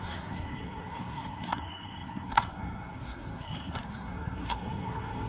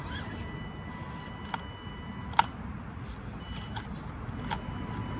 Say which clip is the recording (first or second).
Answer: second